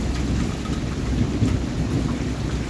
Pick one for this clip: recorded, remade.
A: recorded